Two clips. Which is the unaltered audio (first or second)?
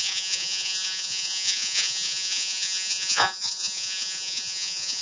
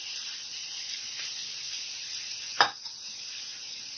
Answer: second